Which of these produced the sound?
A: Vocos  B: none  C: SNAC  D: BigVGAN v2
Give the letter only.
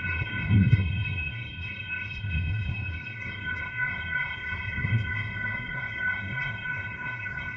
C